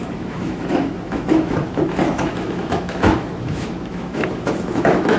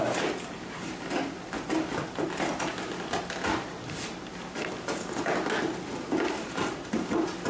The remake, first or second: first